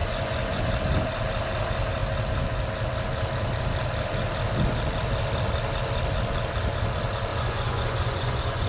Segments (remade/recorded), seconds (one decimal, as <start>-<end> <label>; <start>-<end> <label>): 0.0-0.6 remade; 0.6-7.3 recorded; 7.3-8.7 remade